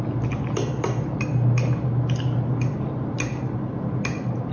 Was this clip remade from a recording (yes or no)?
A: no